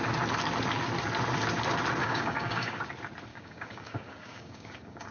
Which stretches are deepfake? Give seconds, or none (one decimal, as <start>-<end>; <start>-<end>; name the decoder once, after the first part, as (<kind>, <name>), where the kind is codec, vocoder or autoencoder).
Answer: 2.0-2.8 (codec, DAC); 3.3-5.1